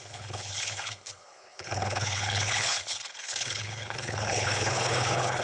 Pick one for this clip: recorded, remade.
remade